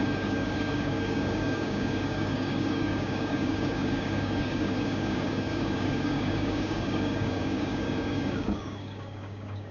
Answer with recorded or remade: remade